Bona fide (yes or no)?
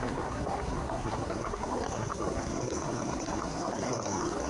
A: no